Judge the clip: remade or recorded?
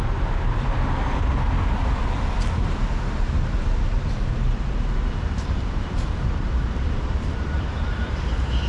remade